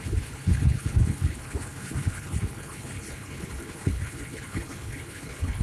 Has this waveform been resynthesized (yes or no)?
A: yes